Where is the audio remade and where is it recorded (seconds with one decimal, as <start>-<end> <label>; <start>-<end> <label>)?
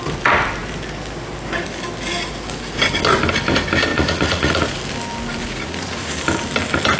0.0-3.9 recorded; 3.9-4.8 remade; 4.8-5.4 recorded; 5.4-6.1 remade; 6.1-7.0 recorded